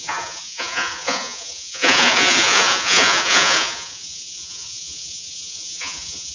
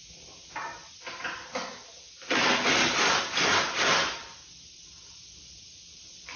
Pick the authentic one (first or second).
second